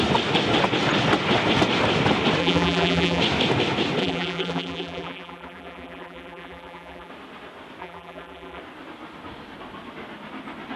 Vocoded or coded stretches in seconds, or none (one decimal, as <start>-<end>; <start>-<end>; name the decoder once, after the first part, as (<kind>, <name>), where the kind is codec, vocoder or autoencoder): 2.4-3.2 (vocoder, BigVGAN v2); 4.0-7.1; 7.8-8.6